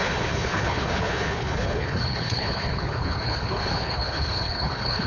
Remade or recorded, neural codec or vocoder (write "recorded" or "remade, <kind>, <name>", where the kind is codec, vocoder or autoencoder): remade, codec, HILCodec